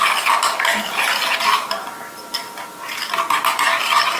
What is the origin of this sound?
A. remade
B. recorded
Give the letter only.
B